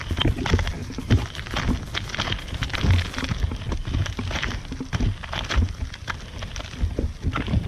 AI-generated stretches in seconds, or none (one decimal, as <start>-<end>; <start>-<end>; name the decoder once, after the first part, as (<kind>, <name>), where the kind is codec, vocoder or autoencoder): 0.8-1.4 (vocoder, BigVGAN v2); 4.0-4.5